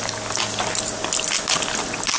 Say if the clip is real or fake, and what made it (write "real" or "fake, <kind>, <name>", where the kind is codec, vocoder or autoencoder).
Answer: real